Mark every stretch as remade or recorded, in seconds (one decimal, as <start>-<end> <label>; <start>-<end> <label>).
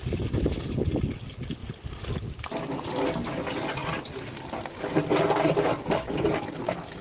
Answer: 0.0-7.0 recorded